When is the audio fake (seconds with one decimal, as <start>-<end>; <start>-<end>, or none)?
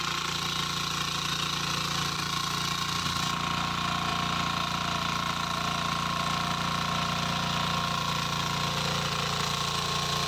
none